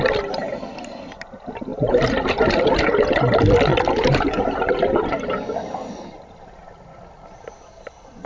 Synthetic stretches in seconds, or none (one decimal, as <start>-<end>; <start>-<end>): 3.7-4.7